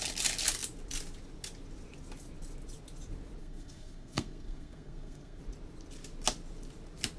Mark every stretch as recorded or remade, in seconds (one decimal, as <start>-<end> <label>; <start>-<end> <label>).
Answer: 0.0-3.4 recorded; 3.4-5.4 remade; 5.4-7.2 recorded